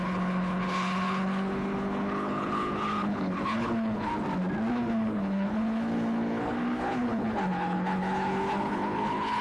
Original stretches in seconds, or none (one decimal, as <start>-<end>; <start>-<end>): 4.1-4.7